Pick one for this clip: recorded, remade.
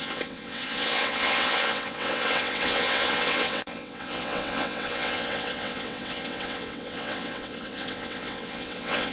remade